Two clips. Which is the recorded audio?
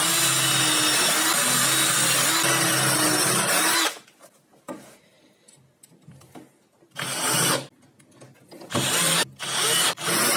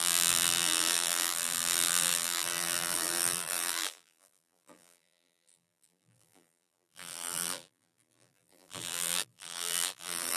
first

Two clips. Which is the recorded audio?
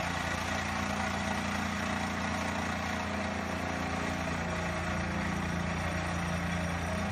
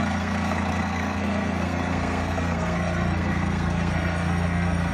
first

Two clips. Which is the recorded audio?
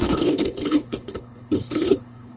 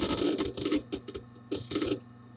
second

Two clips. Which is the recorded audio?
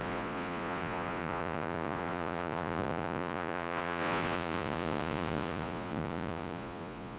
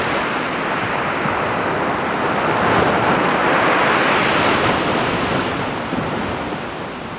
second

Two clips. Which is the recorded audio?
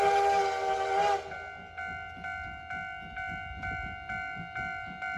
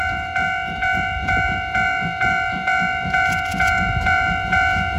first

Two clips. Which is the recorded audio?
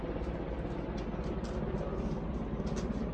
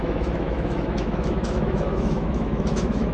first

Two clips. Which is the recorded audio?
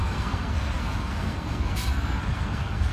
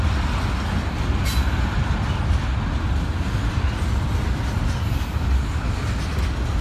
second